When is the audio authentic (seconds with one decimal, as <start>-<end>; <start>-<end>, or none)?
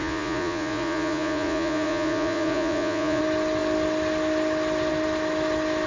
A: 3.2-5.9